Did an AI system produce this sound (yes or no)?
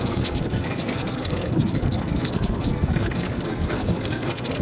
yes